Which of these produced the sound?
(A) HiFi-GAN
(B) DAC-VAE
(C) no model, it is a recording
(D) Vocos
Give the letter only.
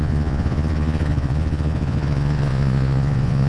D